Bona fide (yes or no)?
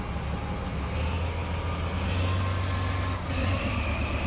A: yes